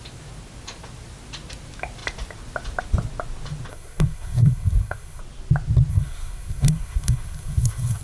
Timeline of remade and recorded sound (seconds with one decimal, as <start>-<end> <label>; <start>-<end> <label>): 0.0-3.7 recorded; 3.7-5.2 remade; 5.2-5.9 recorded; 5.9-8.0 remade